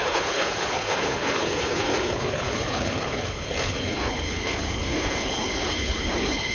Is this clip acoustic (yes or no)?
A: no